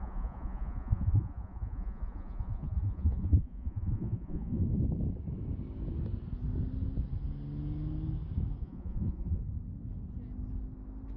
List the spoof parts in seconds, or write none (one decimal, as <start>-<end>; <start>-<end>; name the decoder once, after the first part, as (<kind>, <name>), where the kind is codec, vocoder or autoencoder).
0.0-4.6 (vocoder, Vocos); 8.6-9.4